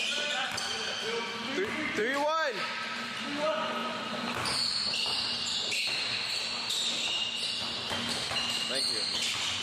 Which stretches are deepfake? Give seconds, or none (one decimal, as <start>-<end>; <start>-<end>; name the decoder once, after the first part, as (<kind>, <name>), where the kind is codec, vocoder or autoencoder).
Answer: 3.8-7.6 (vocoder, BigVGAN v2)